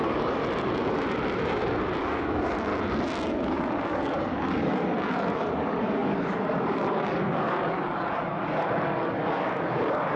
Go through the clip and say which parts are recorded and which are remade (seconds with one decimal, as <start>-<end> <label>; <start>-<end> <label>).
0.0-0.4 remade; 0.4-2.0 recorded; 2.0-2.7 remade; 2.7-3.3 recorded; 3.3-10.2 remade